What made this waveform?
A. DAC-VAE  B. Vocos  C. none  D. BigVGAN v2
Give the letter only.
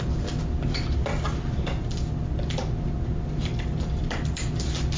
C